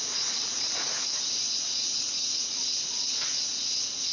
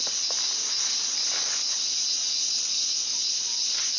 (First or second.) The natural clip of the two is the second